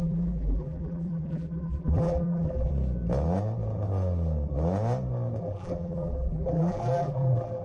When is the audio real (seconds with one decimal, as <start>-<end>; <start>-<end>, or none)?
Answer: 2.7-5.4